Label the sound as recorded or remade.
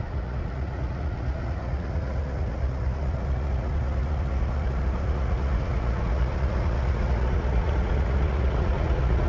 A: remade